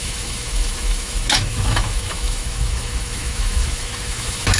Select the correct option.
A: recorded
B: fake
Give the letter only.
B